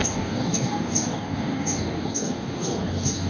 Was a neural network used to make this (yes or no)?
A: yes